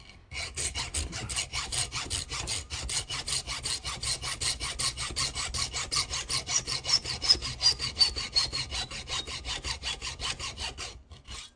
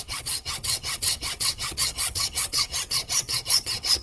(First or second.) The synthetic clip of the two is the second